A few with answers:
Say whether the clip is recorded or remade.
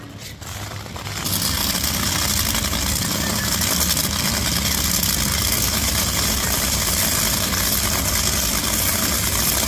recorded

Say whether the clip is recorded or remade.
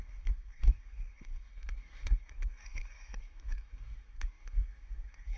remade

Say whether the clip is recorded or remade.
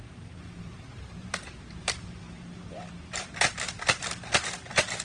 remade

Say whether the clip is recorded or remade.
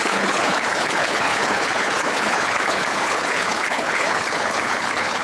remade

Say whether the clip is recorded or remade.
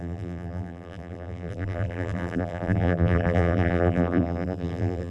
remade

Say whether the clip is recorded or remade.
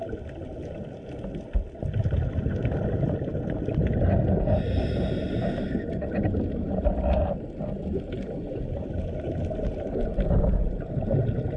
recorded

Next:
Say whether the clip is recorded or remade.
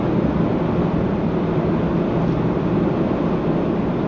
recorded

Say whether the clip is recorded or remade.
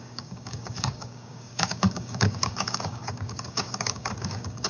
remade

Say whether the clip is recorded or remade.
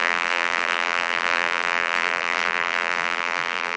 remade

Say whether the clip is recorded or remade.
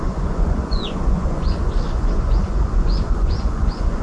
remade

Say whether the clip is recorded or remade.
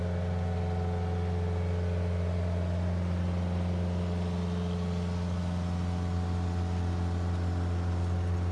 recorded